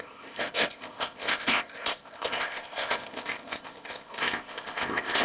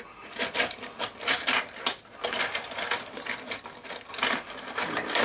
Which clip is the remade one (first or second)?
first